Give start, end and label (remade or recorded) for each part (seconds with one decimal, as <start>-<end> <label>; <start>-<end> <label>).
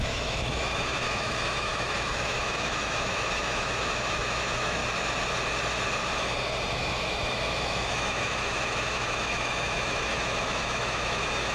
0.0-4.8 remade; 4.8-6.7 recorded; 6.7-11.5 remade